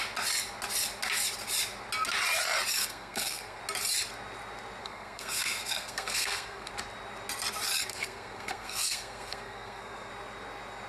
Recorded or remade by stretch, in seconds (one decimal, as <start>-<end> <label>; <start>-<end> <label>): 0.0-2.8 recorded; 2.8-3.6 remade; 3.6-4.8 recorded; 4.8-6.7 remade; 6.7-7.9 recorded; 7.9-10.1 remade; 10.1-10.9 recorded